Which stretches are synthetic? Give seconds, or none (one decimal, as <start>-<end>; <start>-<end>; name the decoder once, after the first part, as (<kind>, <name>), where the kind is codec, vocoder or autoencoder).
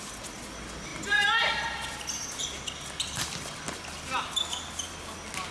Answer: none